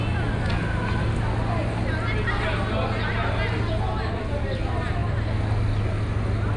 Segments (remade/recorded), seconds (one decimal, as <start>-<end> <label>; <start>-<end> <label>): 0.0-6.6 recorded